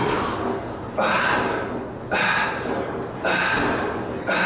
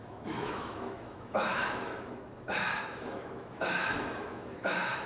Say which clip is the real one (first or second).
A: first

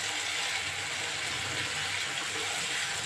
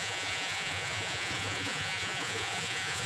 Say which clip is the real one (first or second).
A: first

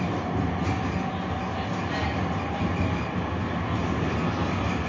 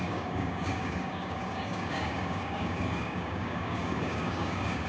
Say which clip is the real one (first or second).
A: first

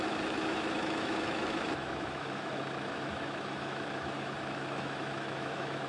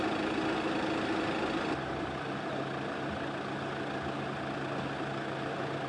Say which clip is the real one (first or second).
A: second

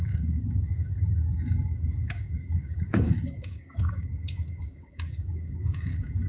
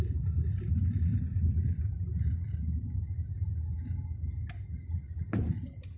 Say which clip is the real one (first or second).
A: second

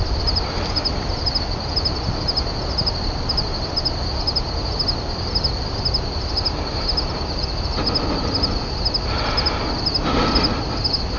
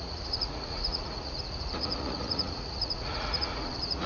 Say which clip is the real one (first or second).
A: first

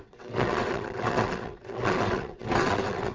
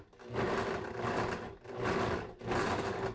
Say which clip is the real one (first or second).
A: second